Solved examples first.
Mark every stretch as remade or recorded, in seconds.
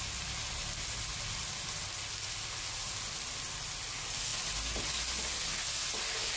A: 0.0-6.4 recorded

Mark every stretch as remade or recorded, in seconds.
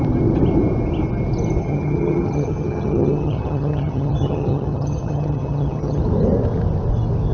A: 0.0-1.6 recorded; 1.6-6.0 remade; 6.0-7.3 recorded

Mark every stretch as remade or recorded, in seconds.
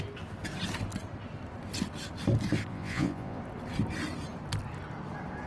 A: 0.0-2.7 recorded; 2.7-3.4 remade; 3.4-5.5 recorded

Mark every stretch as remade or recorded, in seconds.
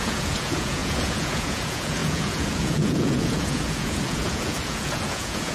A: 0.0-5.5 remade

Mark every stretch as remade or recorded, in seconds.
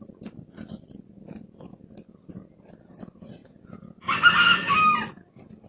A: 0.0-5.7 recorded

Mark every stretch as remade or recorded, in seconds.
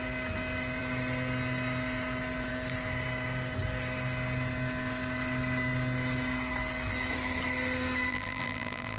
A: 0.0-8.1 recorded; 8.1-9.0 remade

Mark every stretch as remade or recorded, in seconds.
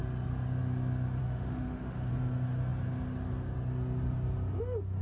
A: 0.0-1.2 recorded; 1.2-2.1 remade; 2.1-5.0 recorded